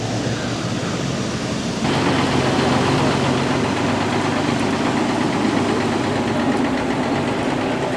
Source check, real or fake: real